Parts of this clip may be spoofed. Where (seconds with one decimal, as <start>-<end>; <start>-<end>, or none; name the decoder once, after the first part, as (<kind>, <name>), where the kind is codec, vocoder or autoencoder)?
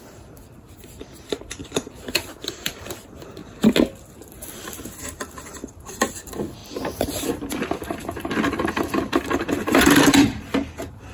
0.0-3.4 (vocoder, BigVGAN v2); 4.7-11.1